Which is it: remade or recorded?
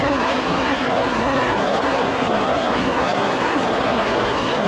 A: remade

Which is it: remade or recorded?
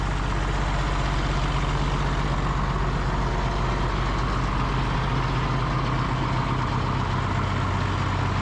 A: recorded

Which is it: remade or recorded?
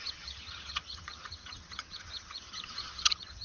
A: remade